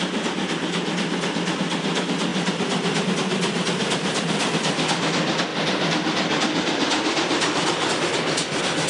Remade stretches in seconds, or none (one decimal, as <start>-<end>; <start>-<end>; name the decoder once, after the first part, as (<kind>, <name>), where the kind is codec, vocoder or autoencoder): 2.3-3.1 (vocoder, BigVGAN v2); 5.5-7.9